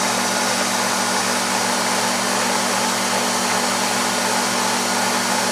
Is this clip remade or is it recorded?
recorded